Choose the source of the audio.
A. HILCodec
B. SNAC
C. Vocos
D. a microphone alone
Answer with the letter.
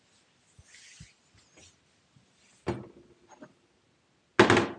D